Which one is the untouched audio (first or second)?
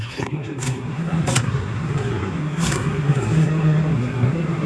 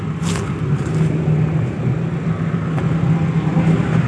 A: second